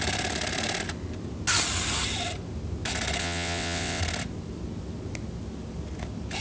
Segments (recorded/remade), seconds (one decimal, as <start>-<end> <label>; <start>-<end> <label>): 0.0-3.2 recorded; 3.2-4.0 remade; 4.0-6.4 recorded